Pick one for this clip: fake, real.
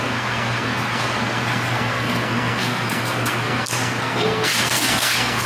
fake